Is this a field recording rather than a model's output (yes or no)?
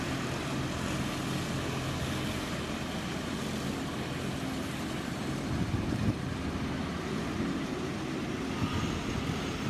yes